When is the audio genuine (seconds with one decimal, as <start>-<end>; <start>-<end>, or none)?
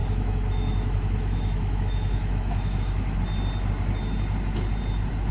3.2-5.3